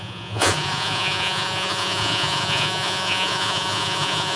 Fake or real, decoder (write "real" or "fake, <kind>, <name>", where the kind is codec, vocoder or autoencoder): fake, vocoder, Vocos